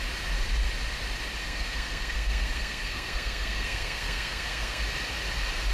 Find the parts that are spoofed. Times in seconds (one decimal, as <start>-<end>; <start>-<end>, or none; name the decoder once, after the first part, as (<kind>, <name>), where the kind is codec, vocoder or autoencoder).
1.4-4.8 (codec, SNAC)